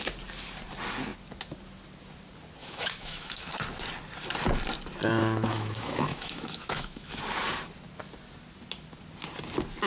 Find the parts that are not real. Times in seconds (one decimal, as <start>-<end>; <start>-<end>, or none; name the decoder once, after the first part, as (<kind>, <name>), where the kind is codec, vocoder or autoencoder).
2.6-3.5 (autoencoder, DAC-VAE); 5.2-7.2